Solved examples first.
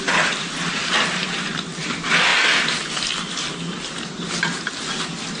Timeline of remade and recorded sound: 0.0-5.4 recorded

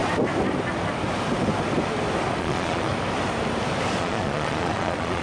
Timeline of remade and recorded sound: 0.0-2.4 recorded; 2.4-2.9 remade; 2.9-4.0 recorded; 4.0-5.2 remade

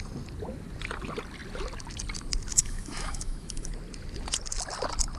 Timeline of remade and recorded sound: 0.0-2.5 recorded; 2.5-3.7 remade; 3.7-5.2 recorded

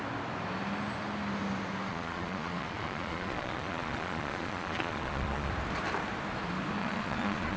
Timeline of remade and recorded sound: 0.0-1.9 recorded; 1.9-5.5 remade; 5.5-6.8 recorded; 6.8-7.6 remade

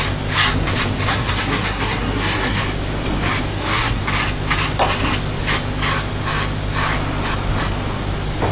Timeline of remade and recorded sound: 0.0-1.1 recorded; 1.1-2.6 remade; 2.6-3.5 recorded; 3.5-4.0 remade; 4.0-8.5 recorded

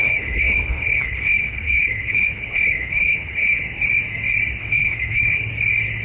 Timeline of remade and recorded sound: 0.0-3.6 remade; 3.6-4.6 recorded; 4.6-5.5 remade; 5.5-6.0 recorded

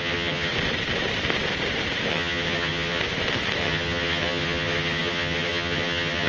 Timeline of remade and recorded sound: 0.0-0.5 remade; 0.5-2.1 recorded; 2.1-3.0 remade; 3.0-3.6 recorded; 3.6-6.3 remade

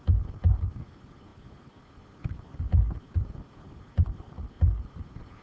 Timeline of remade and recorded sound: 0.0-5.4 recorded